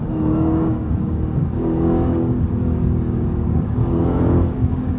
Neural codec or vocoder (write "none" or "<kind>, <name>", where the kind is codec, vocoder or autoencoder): codec, DAC